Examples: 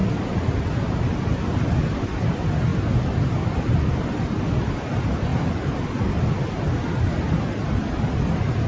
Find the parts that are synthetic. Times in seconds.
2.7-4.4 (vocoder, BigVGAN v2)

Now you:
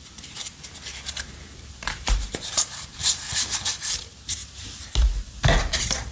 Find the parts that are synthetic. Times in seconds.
0.0-3.0 (vocoder, BigVGAN v2); 3.8-6.1

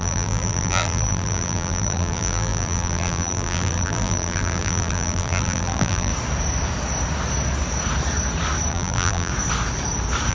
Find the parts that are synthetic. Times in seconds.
0.0-6.1 (vocoder, BigVGAN v2); 8.7-9.3

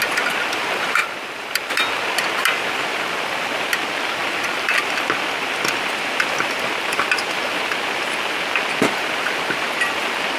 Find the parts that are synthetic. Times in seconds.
1.0-1.7 (vocoder, BigVGAN v2)

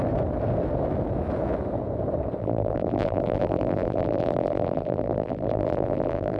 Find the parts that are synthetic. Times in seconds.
2.4-6.4 (vocoder, BigVGAN v2)

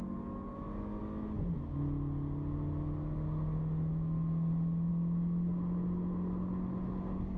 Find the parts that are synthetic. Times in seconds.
none

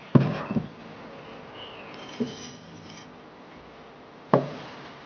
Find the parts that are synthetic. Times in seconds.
0.0-0.8 (vocoder, BigVGAN v2); 2.2-5.1

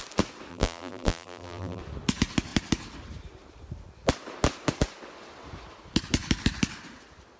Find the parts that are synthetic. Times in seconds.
0.5-1.8 (vocoder, BigVGAN v2)